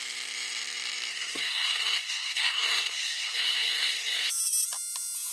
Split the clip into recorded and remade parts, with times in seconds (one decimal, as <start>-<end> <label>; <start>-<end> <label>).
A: 0.0-1.1 recorded; 1.1-4.3 remade; 4.3-5.3 recorded